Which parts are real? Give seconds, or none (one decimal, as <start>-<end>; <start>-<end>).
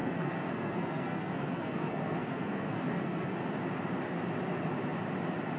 3.4-5.6